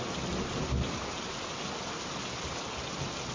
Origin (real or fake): real